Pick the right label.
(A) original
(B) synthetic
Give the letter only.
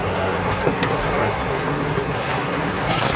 B